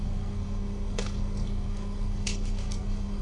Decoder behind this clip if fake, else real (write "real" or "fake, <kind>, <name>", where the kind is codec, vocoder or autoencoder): fake, codec, SNAC